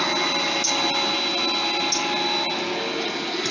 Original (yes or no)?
yes